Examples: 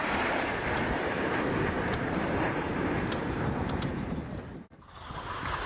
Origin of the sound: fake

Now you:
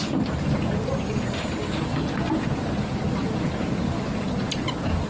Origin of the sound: real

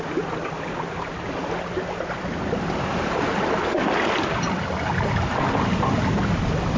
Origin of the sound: real